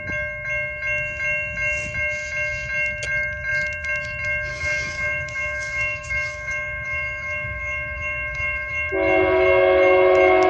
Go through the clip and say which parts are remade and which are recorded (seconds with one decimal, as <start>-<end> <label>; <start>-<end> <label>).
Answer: 0.0-4.5 recorded; 4.5-8.9 remade; 8.9-10.5 recorded